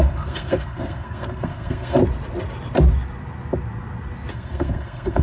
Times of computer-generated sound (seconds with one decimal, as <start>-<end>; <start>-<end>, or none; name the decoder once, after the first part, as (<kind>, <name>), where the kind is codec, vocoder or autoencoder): 0.0-2.0 (codec, SNAC); 4.3-5.2